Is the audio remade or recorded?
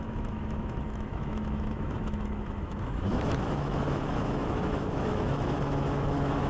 remade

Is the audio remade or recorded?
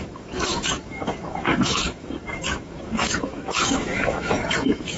remade